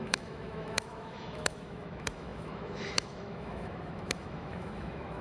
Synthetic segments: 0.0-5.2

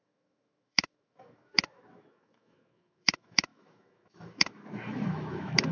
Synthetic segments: 0.0-5.7

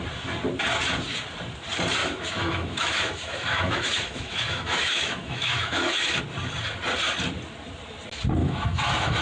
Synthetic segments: 2.0-6.2; 8.4-9.2

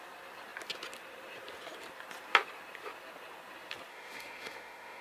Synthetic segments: 3.9-5.0

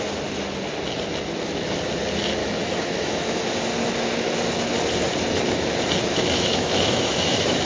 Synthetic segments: 2.4-3.4; 6.0-7.6

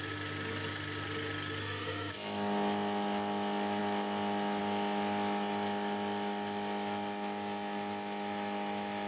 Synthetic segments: 1.6-2.1

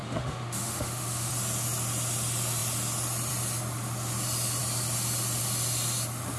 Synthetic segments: 0.0-1.3

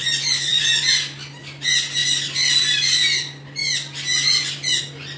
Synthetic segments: none